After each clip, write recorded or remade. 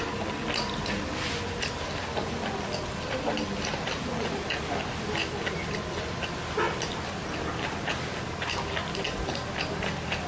recorded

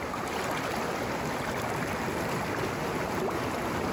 recorded